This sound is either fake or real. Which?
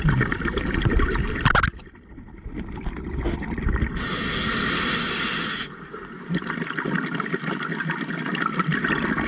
real